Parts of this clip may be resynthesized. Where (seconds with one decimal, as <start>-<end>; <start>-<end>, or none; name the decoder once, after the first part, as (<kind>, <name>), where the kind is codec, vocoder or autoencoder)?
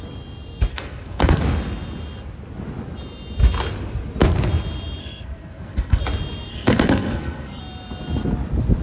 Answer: 0.7-1.4 (codec, SNAC); 5.0-6.0; 6.5-7.6